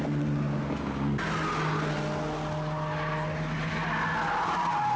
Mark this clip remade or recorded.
recorded